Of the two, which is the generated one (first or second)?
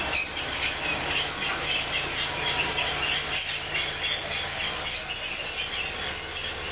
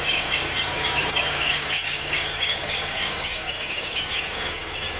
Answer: second